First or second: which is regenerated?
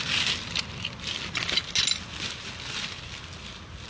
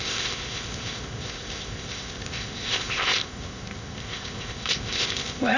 second